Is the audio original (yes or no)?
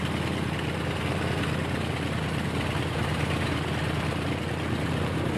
yes